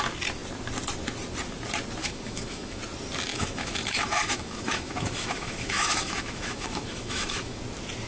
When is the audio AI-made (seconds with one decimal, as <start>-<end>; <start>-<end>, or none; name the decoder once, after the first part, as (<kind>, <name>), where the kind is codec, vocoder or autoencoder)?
2.0-2.8 (autoencoder, DAC-VAE); 3.3-7.6